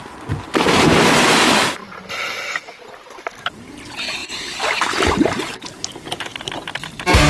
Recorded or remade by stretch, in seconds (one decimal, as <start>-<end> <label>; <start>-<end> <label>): 0.0-4.2 recorded; 4.2-5.8 remade; 5.8-7.3 recorded

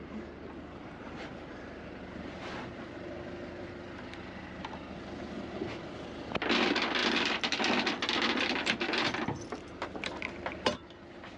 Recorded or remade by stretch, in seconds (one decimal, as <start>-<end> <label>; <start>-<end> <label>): 0.0-11.4 recorded

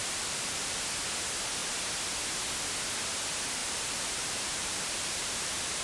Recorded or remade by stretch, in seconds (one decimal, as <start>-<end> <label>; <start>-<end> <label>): 0.0-0.8 remade; 0.8-3.6 recorded; 3.6-5.8 remade

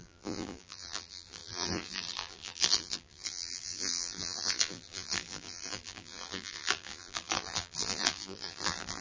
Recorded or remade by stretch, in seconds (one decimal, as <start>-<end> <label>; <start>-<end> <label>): 0.0-9.0 remade

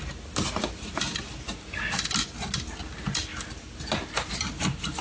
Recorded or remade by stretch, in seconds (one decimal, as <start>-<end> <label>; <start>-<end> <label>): 0.0-5.0 recorded

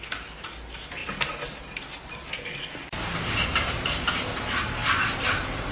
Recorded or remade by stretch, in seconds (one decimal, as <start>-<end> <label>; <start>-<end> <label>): 0.0-3.1 recorded; 3.1-4.1 remade; 4.1-4.8 recorded; 4.8-5.7 remade

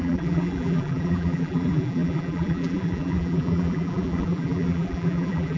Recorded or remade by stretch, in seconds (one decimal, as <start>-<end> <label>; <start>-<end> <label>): 0.0-5.6 remade